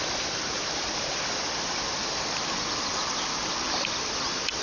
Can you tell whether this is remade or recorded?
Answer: recorded